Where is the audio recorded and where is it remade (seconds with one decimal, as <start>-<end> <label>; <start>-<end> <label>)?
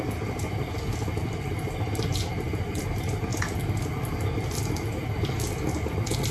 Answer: 0.0-6.3 recorded